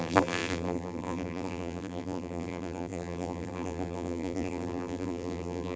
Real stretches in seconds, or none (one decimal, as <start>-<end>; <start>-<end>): none